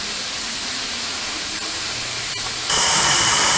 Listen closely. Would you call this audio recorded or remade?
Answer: remade